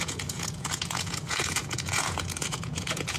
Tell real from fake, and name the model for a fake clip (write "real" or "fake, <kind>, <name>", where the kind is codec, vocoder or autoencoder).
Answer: fake, vocoder, Vocos